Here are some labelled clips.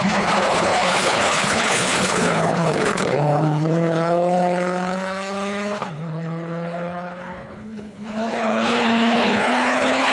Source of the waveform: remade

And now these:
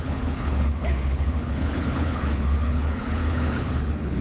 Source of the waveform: remade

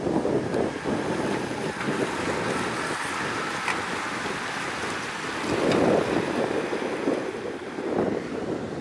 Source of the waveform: recorded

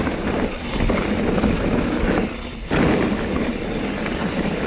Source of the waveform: recorded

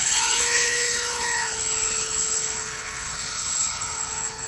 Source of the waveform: remade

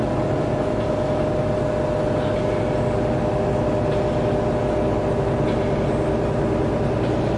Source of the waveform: recorded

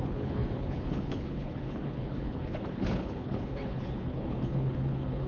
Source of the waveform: remade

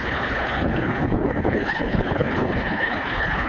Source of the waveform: remade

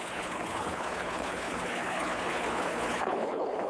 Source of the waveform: remade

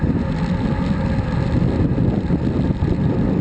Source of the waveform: recorded